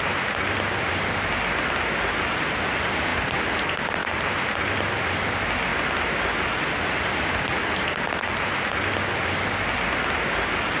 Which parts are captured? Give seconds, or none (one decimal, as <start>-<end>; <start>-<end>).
0.0-10.8